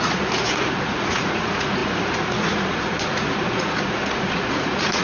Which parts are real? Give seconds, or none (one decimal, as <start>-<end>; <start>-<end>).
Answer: none